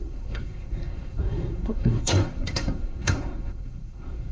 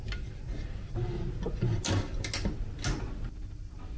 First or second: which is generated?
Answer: first